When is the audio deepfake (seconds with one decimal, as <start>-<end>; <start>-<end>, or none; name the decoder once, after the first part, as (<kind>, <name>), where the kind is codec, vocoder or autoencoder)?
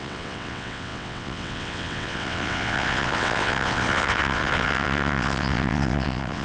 0.0-6.4 (vocoder, WaveNeXt)